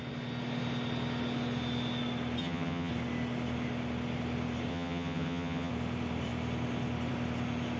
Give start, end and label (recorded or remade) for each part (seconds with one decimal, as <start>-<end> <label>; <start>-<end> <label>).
0.0-2.4 recorded; 2.4-2.9 remade; 2.9-4.7 recorded; 4.7-5.7 remade; 5.7-7.8 recorded